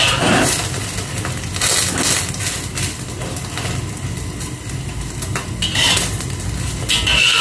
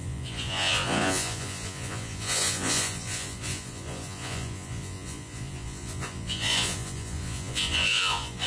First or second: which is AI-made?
second